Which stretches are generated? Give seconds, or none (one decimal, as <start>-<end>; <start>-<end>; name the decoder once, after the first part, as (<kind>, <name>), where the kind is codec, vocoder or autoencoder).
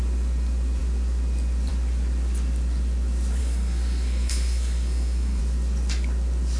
3.4-5.4 (codec, SNAC)